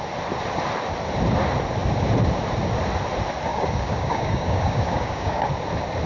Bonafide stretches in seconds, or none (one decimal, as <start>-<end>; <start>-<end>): 0.0-3.5; 5.5-6.1

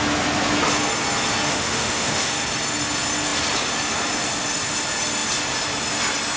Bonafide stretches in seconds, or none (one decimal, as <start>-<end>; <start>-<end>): 0.0-1.5; 2.3-6.4

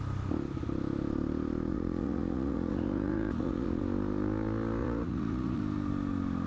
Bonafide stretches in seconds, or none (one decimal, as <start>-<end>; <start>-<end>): 0.0-1.7; 3.8-4.8; 5.6-6.5

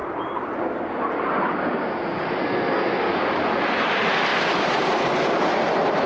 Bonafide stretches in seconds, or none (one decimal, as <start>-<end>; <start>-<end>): 0.0-2.4; 3.1-6.1

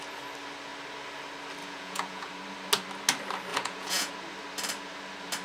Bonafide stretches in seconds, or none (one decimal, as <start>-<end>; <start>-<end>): 0.0-1.6; 2.3-3.5; 4.1-5.4